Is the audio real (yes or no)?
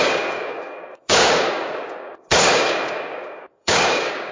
no